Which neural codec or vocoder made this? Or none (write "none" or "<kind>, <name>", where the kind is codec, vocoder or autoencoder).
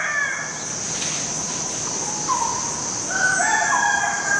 none